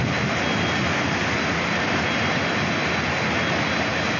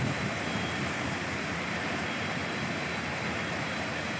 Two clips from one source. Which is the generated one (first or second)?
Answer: second